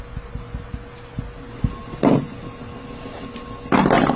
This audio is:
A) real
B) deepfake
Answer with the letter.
A